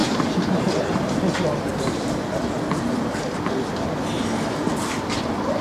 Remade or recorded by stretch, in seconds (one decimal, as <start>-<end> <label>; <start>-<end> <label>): 0.0-1.7 remade; 1.7-5.1 recorded; 5.1-5.6 remade